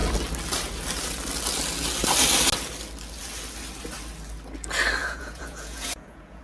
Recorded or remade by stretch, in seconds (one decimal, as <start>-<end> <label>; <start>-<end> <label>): 0.0-5.0 recorded; 5.0-6.4 remade